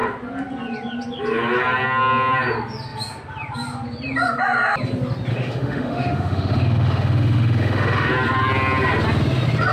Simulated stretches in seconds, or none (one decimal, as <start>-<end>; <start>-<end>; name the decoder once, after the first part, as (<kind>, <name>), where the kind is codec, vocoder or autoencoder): 5.3-8.1 (autoencoder, DAC-VAE)